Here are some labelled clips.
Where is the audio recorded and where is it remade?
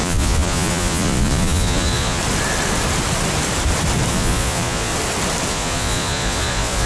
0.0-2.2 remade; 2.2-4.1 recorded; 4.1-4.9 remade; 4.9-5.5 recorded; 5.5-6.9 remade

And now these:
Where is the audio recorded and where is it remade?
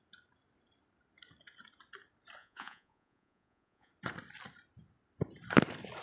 0.0-2.4 recorded; 2.4-3.9 remade; 3.9-6.0 recorded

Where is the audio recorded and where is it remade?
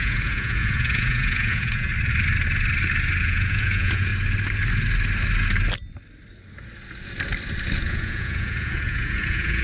0.0-1.9 remade; 1.9-3.2 recorded; 3.2-4.1 remade; 4.1-7.8 recorded; 7.8-9.6 remade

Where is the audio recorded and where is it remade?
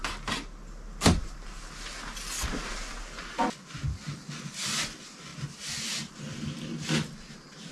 0.0-7.7 recorded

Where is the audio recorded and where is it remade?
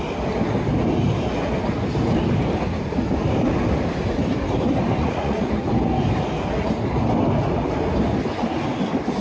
0.0-5.0 recorded; 5.0-5.5 remade; 5.5-9.2 recorded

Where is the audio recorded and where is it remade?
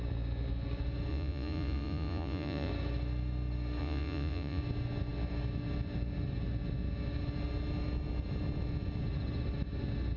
0.0-1.1 recorded; 1.1-2.7 remade; 2.7-3.8 recorded; 3.8-4.6 remade; 4.6-10.2 recorded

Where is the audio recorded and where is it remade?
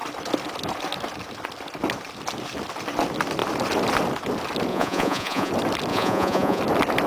0.0-4.7 recorded; 4.7-5.5 remade; 5.5-5.9 recorded; 5.9-6.6 remade; 6.6-7.1 recorded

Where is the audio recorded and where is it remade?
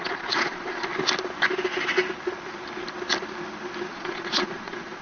0.0-0.9 remade; 0.9-3.9 recorded; 3.9-5.0 remade